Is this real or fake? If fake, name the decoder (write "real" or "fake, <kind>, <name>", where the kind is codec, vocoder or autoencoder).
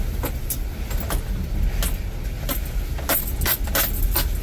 real